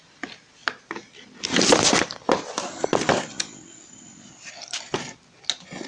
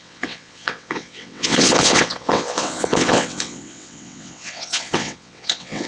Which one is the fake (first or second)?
second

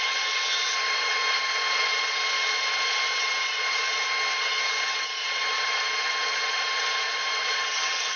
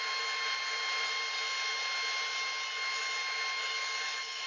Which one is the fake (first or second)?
first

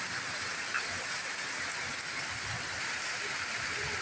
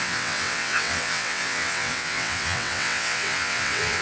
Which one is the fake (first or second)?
second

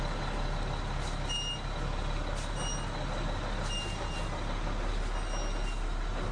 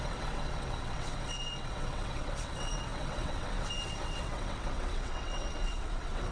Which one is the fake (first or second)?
second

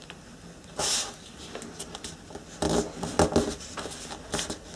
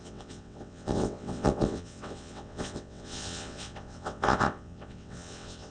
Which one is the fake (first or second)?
second